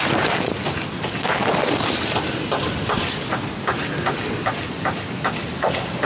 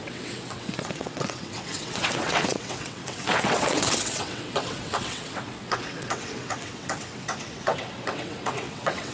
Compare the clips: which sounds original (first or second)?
first